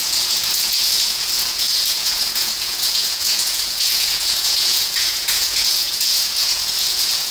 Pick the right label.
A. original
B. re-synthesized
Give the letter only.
B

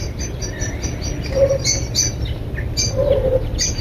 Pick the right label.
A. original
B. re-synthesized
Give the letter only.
A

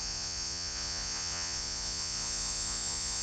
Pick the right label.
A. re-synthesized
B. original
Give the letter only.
A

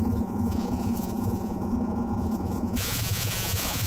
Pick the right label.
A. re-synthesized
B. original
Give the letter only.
A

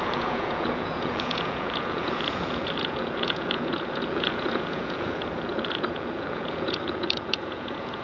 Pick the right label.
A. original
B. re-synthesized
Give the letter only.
B